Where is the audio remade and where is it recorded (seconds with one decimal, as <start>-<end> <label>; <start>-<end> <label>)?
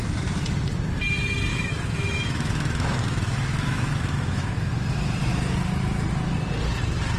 0.0-1.5 recorded; 1.5-4.7 remade; 4.7-7.2 recorded